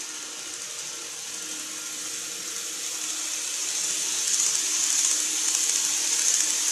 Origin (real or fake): real